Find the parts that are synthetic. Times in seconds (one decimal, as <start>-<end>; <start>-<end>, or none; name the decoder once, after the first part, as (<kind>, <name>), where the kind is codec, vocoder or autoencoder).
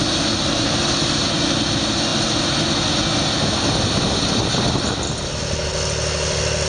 none